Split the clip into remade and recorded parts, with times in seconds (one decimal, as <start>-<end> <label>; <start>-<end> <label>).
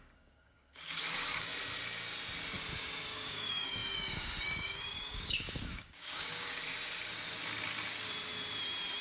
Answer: 0.0-1.5 remade; 1.5-2.7 recorded; 2.7-6.6 remade; 6.6-9.0 recorded